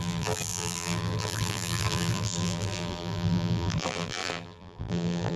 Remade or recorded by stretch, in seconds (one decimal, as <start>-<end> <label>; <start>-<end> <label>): 0.0-5.4 remade